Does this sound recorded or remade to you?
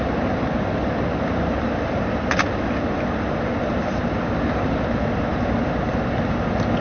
recorded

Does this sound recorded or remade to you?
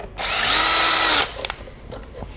recorded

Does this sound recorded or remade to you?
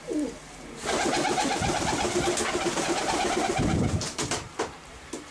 recorded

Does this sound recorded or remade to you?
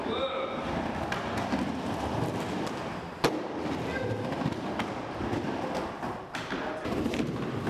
recorded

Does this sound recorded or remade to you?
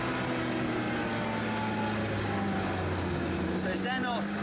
recorded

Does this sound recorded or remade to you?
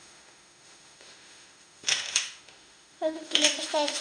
remade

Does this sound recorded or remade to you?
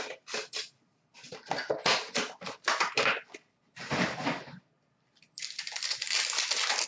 recorded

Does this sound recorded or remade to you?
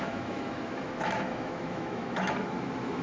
remade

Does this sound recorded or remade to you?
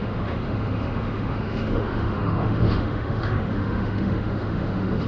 remade